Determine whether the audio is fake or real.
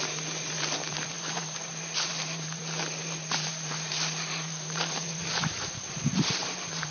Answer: fake